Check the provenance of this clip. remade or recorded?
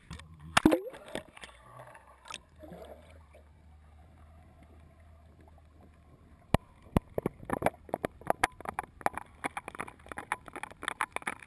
recorded